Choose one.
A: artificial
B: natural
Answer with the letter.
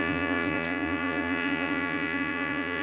A